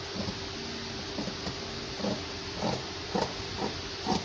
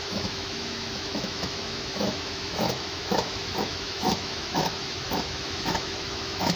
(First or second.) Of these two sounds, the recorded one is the first